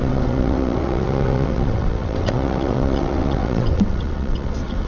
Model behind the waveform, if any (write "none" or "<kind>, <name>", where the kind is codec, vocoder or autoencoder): vocoder, WaveNeXt